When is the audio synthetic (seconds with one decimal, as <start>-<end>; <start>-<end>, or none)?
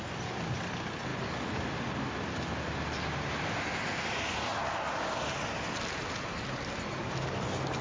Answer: none